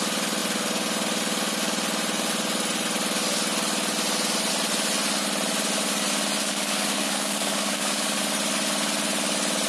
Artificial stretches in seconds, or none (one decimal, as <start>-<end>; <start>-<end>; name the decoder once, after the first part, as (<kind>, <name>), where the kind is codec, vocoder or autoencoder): 6.4-8.2 (codec, DAC)